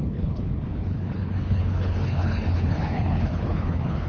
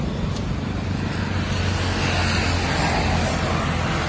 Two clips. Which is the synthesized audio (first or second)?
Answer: first